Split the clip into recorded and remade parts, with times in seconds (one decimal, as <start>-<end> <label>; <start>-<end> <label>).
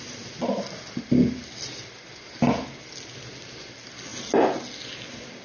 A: 0.0-5.4 recorded